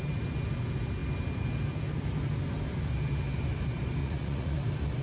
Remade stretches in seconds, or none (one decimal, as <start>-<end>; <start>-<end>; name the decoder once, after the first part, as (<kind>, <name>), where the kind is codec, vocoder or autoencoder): 4.0-4.6 (vocoder, Vocos)